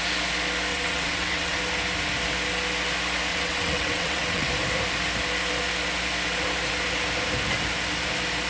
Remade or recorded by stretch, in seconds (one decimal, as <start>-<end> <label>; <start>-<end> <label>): 0.0-0.7 recorded; 0.7-1.6 remade; 1.6-3.3 recorded; 3.3-4.5 remade; 4.5-8.5 recorded